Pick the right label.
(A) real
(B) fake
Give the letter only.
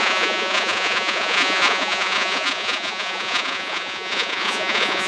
B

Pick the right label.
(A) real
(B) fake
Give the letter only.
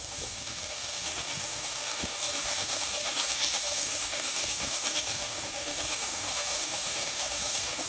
B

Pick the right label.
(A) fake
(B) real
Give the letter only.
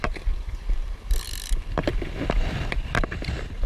A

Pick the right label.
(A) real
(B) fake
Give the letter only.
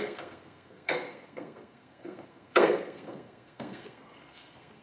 B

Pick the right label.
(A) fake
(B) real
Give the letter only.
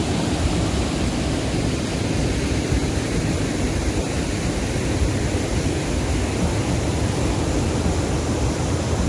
B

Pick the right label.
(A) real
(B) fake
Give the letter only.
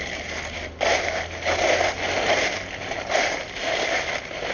A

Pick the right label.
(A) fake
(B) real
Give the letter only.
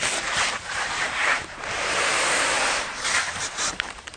A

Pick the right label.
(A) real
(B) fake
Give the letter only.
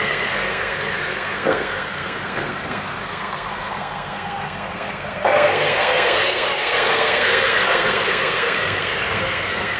B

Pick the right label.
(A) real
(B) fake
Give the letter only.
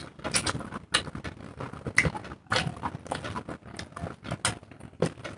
A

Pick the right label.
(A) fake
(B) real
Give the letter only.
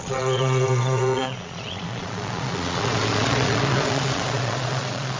A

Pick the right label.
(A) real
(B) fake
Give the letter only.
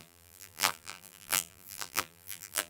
B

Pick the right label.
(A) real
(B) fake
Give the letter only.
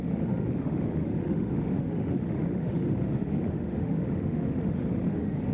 B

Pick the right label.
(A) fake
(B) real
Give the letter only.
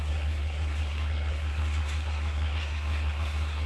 A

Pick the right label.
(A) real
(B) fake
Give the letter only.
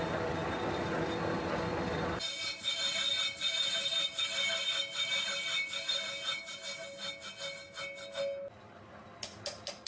A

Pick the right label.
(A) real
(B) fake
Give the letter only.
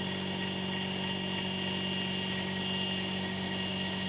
A